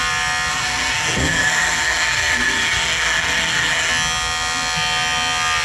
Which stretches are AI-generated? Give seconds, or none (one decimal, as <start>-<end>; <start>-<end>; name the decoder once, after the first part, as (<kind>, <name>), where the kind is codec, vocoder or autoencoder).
0.5-3.9 (codec, SNAC)